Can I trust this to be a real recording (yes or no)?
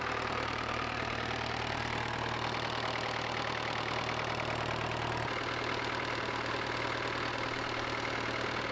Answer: yes